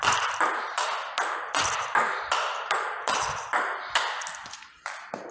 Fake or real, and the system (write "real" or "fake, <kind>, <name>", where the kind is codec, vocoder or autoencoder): real